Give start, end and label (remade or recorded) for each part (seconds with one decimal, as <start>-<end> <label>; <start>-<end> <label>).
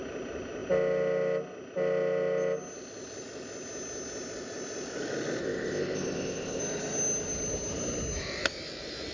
0.0-5.4 recorded; 5.4-6.6 remade; 6.6-9.1 recorded